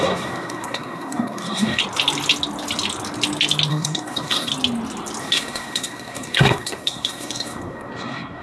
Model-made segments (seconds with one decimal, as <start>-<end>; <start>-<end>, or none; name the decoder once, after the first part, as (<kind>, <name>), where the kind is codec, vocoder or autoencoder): 0.0-1.8 (codec, SNAC); 3.7-4.5; 5.2-8.4